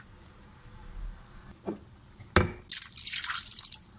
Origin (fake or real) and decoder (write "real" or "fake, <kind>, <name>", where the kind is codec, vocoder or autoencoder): real